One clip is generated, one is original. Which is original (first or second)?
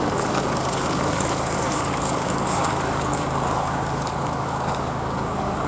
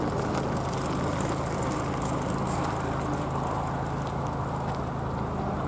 second